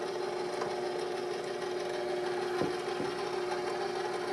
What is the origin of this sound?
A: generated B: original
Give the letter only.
B